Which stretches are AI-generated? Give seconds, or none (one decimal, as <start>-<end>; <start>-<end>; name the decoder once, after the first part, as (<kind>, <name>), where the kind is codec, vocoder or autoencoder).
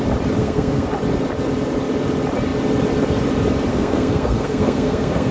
0.4-0.9 (codec, SNAC); 3.7-5.3